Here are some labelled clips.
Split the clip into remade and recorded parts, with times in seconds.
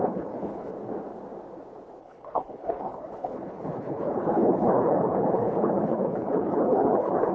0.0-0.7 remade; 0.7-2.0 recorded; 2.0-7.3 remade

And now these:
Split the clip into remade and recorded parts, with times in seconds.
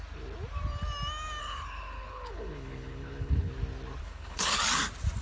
0.0-1.4 recorded; 1.4-3.5 remade; 3.5-4.0 recorded; 4.0-4.6 remade; 4.6-5.2 recorded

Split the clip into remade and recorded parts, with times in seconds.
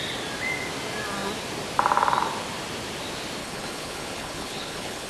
0.0-3.4 recorded; 3.4-5.1 remade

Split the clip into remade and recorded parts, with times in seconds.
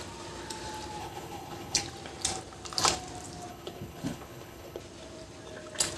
0.0-1.0 recorded; 1.0-1.8 remade; 1.8-3.5 recorded; 3.5-4.8 remade; 4.8-6.0 recorded